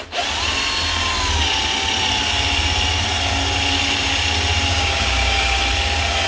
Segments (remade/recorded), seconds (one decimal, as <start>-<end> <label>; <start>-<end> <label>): 0.0-4.7 recorded; 4.7-5.6 remade; 5.6-6.3 recorded